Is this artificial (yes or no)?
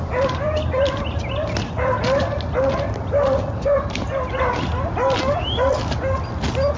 no